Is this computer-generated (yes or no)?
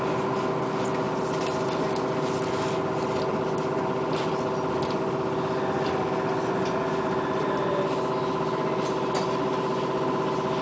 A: no